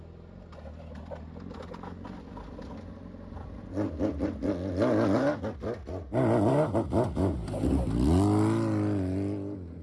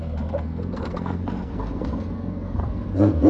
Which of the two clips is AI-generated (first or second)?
second